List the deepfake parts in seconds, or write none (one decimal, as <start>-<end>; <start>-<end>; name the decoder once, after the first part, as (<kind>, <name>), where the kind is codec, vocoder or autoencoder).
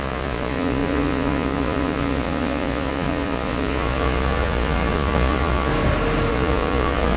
0.0-5.7 (vocoder, Vocos); 6.3-7.2